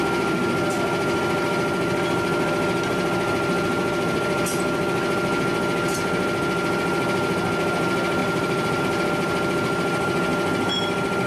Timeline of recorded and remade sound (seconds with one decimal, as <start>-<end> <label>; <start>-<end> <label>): 0.0-8.2 recorded; 8.2-8.8 remade; 8.8-11.3 recorded